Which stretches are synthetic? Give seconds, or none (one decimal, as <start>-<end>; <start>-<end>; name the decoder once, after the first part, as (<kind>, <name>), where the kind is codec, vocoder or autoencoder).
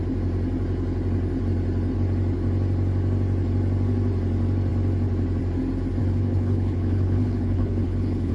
6.0-8.3 (codec, HILCodec)